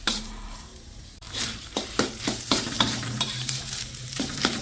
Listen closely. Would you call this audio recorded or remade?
remade